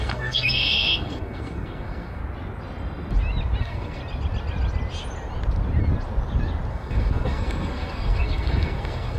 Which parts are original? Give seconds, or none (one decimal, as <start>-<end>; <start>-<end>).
2.2-3.6; 4.0-6.7